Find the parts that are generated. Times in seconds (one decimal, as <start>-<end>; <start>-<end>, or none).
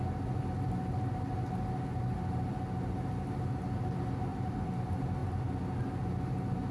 4.3-4.8